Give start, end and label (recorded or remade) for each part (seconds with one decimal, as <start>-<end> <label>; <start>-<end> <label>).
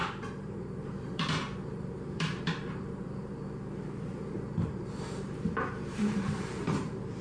0.0-7.2 remade